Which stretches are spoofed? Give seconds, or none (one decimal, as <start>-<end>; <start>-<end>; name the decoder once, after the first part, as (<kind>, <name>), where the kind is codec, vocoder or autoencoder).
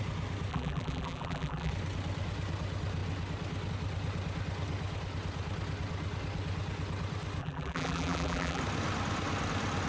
0.5-1.7 (vocoder, BigVGAN v2); 7.4-8.6